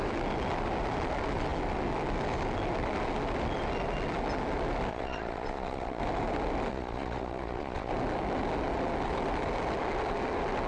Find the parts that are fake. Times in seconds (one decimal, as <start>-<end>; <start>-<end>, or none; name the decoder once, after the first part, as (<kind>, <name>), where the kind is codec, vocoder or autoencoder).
4.9-6.0 (vocoder, Vocos); 6.7-7.9